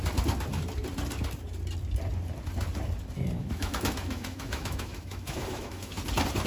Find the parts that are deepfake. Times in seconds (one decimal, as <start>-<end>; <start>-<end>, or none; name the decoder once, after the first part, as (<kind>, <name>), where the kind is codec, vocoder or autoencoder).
3.4-6.0 (autoencoder, DAC-VAE)